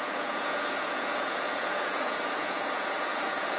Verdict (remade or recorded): remade